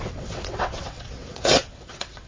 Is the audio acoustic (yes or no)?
no